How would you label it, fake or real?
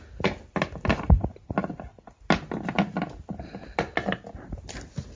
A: real